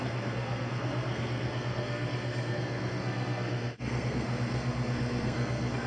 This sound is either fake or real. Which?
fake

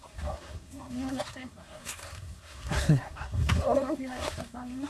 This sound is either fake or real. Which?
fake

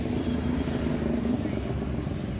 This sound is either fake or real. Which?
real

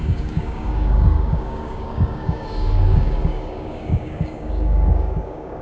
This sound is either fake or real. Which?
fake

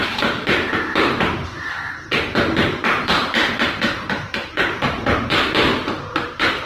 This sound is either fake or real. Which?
fake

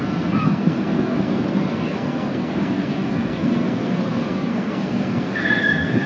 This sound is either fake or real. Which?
fake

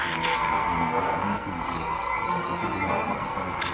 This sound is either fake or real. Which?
fake